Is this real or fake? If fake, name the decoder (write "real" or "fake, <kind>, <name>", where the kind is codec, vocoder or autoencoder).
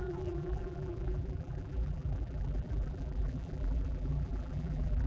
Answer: fake, vocoder, BigVGAN v2